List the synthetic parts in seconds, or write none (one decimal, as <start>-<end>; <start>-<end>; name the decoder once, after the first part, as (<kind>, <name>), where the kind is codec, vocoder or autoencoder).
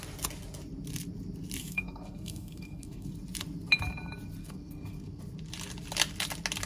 1.6-3.1 (codec, SNAC); 4.4-5.2